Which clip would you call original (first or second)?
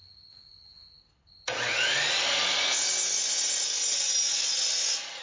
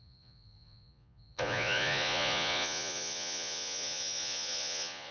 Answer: first